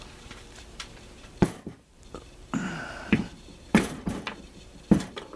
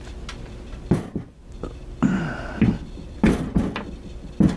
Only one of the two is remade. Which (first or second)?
first